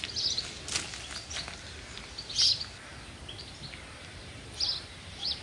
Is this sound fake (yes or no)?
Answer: no